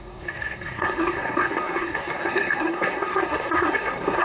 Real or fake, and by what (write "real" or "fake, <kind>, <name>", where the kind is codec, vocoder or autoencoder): fake, codec, SNAC